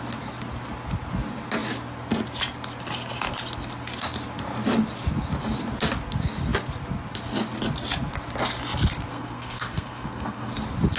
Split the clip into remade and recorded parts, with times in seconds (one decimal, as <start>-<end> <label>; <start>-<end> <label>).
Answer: 0.0-9.1 recorded; 9.1-10.5 remade; 10.5-11.0 recorded